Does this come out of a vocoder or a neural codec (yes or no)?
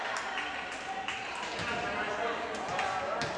no